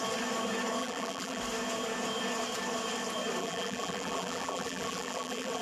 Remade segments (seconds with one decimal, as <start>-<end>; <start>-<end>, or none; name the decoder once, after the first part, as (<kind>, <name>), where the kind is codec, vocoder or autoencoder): 0.8-1.4 (vocoder, BigVGAN v2); 3.4-5.6